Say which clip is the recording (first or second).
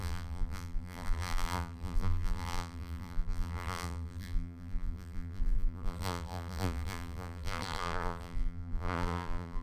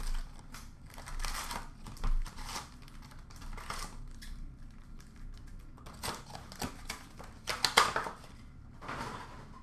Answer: second